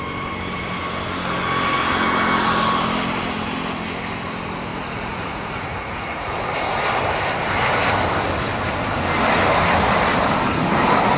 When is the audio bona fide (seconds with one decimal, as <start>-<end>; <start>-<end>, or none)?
0.0-4.7; 6.3-11.2